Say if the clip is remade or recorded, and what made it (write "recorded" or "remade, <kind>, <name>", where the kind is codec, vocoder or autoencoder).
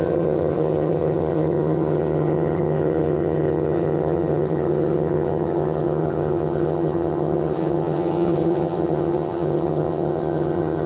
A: remade, vocoder, HiFi-GAN